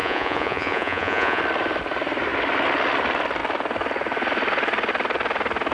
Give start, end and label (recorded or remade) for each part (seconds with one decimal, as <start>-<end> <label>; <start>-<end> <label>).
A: 0.0-1.4 remade; 1.4-5.7 recorded